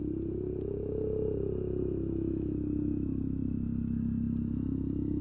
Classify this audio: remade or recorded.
recorded